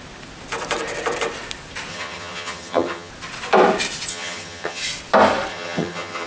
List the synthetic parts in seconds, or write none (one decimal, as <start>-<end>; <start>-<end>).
1.9-3.1; 4.1-4.8; 5.5-6.3